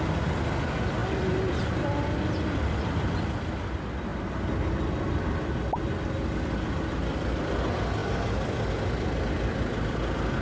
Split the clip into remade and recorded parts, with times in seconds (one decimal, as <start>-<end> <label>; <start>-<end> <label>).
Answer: 0.0-10.4 recorded